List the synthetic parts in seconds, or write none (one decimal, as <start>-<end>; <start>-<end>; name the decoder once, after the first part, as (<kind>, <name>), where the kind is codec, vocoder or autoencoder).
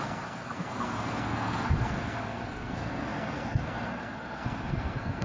0.0-5.2 (codec, SNAC)